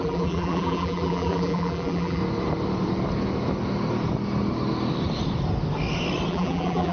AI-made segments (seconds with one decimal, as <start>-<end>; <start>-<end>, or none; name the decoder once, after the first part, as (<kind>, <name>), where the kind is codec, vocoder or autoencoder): 0.0-2.2 (vocoder, BigVGAN v2); 6.3-6.9